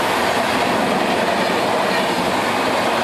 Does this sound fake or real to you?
real